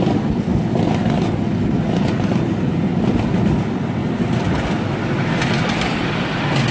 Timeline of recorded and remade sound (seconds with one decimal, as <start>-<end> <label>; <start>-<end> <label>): 0.0-6.7 recorded